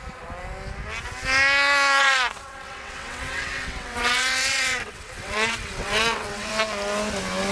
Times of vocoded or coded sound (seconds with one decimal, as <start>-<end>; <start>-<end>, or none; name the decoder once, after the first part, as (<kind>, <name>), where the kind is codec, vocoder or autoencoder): 2.0-6.5 (vocoder, WaveNeXt)